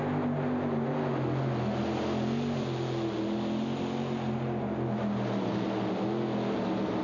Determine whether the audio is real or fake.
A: real